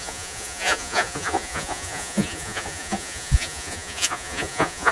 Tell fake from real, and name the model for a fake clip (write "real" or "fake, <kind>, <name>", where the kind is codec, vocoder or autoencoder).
fake, vocoder, Vocos